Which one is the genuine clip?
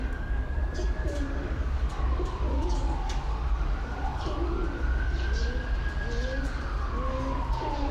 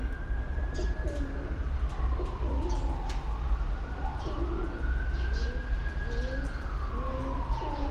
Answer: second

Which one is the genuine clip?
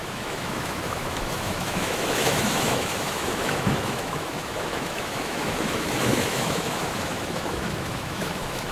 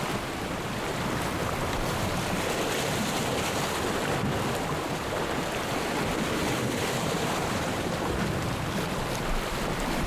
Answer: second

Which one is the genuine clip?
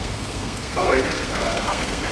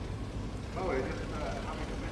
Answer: second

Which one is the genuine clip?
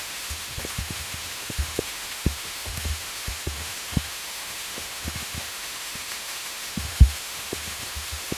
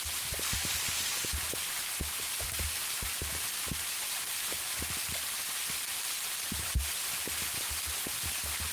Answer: second